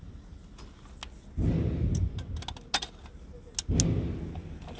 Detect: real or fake real